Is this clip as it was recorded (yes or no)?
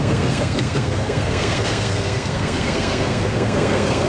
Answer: no